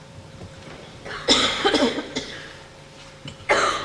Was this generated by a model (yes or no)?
yes